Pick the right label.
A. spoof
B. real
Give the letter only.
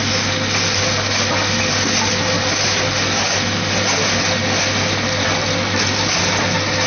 B